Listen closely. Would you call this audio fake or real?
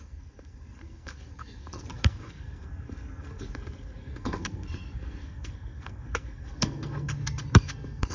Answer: fake